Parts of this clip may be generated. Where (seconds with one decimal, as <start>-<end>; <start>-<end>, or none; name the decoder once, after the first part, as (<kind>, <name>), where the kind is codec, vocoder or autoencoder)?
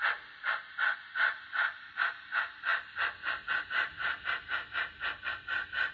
none